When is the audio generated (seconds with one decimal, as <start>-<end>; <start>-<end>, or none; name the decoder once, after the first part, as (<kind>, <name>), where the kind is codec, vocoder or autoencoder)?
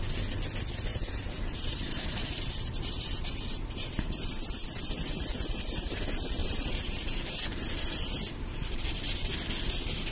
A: 0.9-6.0 (vocoder, BigVGAN v2); 6.4-9.2